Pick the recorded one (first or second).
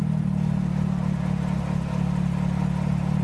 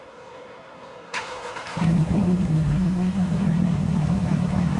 first